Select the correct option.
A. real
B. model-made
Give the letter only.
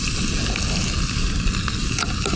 A